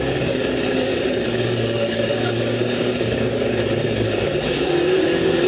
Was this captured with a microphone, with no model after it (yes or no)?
no